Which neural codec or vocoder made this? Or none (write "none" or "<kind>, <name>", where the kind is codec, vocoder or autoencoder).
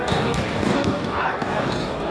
codec, DAC